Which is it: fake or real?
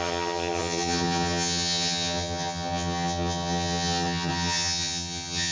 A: fake